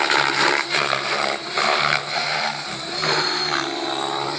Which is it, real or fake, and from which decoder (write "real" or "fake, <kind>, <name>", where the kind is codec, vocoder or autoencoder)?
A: fake, vocoder, BigVGAN v2